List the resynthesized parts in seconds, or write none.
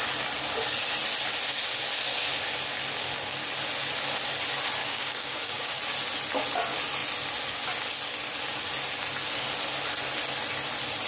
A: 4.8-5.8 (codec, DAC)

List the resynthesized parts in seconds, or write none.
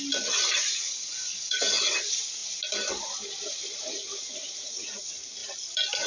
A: 0.7-1.6 (codec, DAC)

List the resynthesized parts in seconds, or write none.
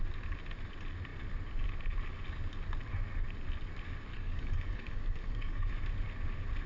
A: 4.1-5.7 (codec, DAC)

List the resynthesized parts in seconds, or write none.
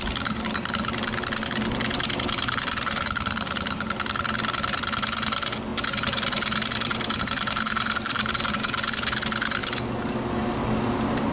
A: none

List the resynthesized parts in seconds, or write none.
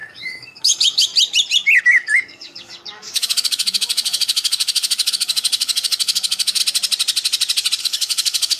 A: 0.0-1.1 (codec, DAC); 1.8-6.6; 7.8-8.6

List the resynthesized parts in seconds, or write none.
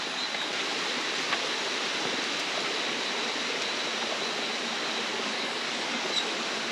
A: 5.1-6.2 (codec, DAC)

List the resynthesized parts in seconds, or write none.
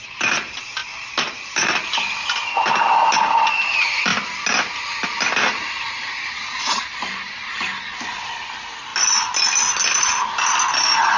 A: none